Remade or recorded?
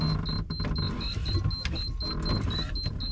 recorded